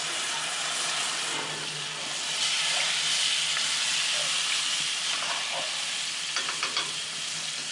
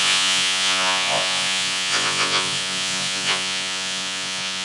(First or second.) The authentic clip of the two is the first